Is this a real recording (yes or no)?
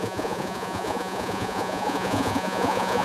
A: no